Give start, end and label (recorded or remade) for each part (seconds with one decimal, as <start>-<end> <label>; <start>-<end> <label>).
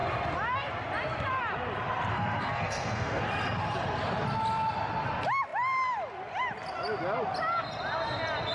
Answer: 0.0-2.1 recorded; 2.1-3.2 remade; 3.2-8.5 recorded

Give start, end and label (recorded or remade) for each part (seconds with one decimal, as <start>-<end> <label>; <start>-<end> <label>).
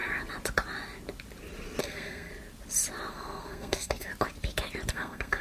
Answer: 0.0-1.8 recorded; 1.8-2.3 remade; 2.3-3.1 recorded; 3.1-4.1 remade; 4.1-4.9 recorded; 4.9-5.4 remade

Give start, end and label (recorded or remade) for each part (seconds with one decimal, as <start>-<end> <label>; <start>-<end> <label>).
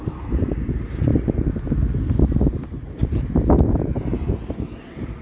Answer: 0.0-5.2 recorded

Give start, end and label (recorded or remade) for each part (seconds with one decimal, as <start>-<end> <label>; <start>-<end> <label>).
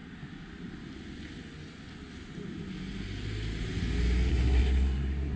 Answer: 0.0-4.3 recorded; 4.3-5.4 remade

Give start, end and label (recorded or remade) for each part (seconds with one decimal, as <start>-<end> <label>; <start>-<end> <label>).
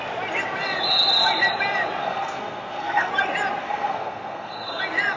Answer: 0.0-2.0 recorded; 2.0-3.1 remade; 3.1-3.6 recorded; 3.6-4.8 remade; 4.8-5.2 recorded